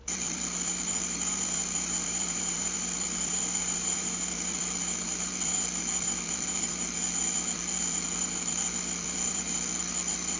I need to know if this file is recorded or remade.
remade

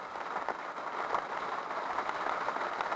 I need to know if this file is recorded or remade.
recorded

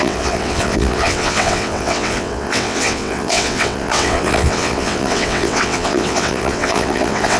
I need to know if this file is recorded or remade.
remade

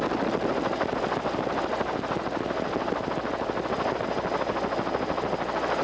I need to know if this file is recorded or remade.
recorded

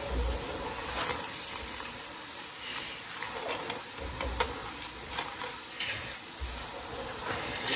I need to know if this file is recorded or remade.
recorded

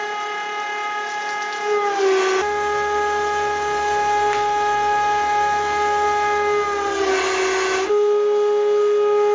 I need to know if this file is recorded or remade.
recorded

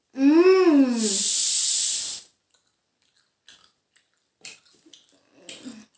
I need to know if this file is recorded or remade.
recorded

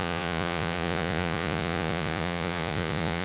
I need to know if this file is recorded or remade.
remade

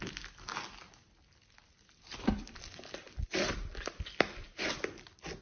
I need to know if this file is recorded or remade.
recorded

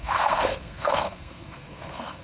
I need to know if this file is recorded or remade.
remade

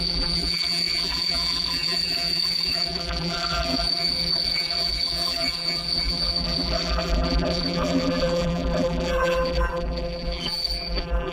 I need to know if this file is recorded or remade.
remade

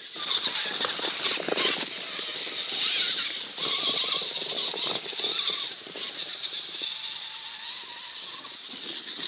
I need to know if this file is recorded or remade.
recorded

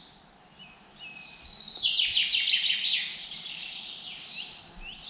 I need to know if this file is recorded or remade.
recorded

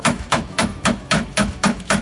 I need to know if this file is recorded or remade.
remade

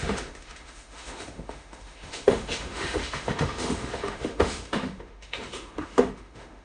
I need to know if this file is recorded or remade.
remade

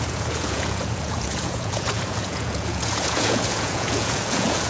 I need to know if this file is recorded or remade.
remade